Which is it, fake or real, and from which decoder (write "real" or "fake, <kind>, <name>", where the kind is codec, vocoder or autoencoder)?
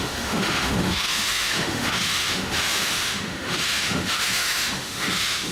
fake, autoencoder, DAC-VAE